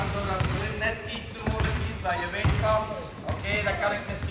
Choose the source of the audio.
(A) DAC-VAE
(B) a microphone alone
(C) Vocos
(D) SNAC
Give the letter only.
B